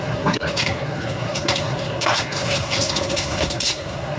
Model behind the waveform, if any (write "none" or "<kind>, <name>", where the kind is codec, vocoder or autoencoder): codec, SNAC